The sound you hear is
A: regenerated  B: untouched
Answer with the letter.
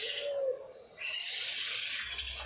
B